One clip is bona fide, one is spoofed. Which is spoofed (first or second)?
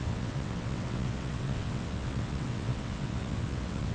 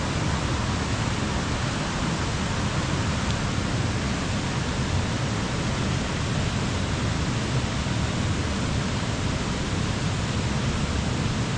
first